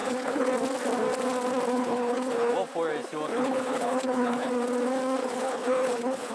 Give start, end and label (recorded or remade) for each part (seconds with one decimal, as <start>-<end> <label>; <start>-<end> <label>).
0.0-0.5 remade; 0.5-1.7 recorded; 1.7-2.5 remade; 2.5-3.3 recorded; 3.3-4.5 remade; 4.5-5.2 recorded; 5.2-6.3 remade